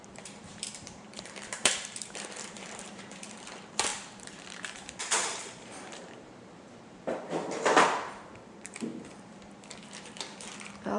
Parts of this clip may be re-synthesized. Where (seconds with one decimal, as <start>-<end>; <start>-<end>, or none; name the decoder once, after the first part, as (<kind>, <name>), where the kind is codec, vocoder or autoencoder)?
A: 0.0-8.9 (vocoder, BigVGAN v2); 10.0-11.0